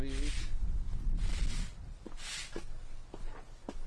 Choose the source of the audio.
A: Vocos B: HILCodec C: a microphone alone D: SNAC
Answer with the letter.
C